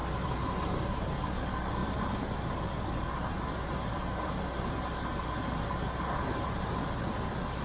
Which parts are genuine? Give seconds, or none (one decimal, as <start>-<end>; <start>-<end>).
0.0-7.6